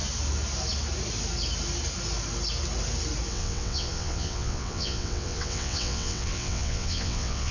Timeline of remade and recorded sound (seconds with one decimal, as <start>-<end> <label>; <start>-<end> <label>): 0.0-3.3 recorded; 3.3-7.5 remade